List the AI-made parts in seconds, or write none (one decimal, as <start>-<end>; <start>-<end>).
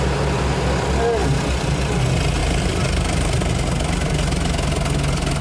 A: 1.2-2.0; 2.4-3.5